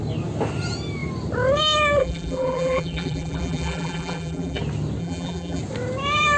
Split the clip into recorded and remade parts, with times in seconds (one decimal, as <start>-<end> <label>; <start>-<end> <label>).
0.0-2.0 recorded; 2.0-4.6 remade; 4.6-5.0 recorded; 5.0-5.6 remade; 5.6-6.4 recorded